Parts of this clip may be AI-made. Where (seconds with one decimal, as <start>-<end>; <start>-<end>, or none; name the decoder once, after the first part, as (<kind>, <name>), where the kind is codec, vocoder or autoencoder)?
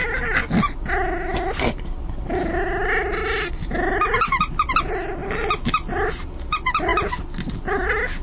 none